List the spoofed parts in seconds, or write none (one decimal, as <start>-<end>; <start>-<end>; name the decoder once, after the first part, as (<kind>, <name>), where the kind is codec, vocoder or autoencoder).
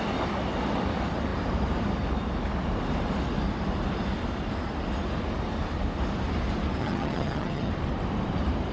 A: 6.8-7.7 (vocoder, HiFi-GAN)